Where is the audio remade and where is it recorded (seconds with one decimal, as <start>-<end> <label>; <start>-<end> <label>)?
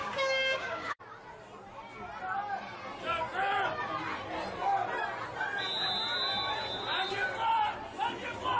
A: 0.0-1.0 remade; 1.0-8.6 recorded